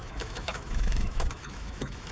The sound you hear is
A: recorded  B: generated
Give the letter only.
B